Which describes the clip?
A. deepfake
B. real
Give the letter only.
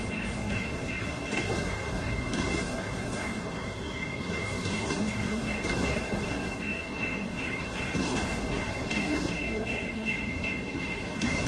A